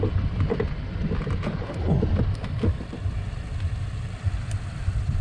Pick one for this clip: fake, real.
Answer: real